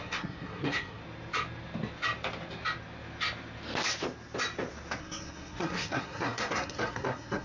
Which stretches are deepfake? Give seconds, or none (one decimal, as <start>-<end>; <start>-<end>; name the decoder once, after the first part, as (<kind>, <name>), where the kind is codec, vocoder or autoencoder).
0.0-1.0 (codec, SNAC); 5.0-7.4